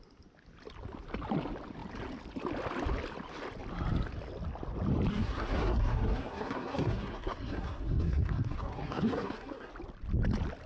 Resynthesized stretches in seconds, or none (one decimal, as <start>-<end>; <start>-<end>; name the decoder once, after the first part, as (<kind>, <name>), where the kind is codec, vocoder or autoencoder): 5.1-9.7 (codec, SNAC)